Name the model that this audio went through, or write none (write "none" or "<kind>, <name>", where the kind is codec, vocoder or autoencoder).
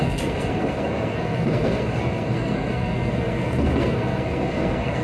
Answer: codec, SNAC